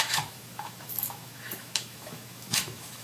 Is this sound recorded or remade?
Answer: remade